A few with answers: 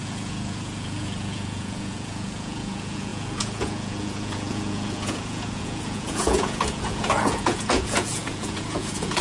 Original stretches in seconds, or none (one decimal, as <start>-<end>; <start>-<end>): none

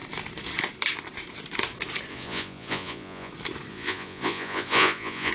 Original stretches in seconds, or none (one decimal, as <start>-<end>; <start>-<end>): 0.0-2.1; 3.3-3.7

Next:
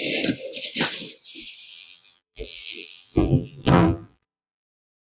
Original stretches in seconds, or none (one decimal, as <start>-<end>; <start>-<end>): 0.0-1.7

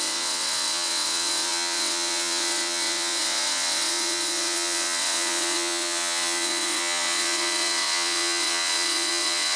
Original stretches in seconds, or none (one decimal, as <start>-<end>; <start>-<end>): none